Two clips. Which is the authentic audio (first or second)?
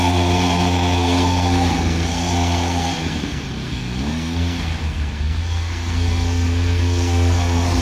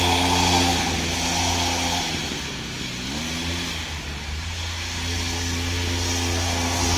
second